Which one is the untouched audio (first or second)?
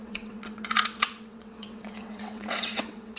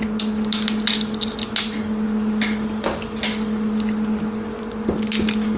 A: second